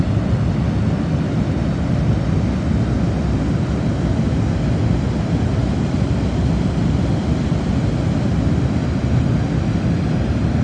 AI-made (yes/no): no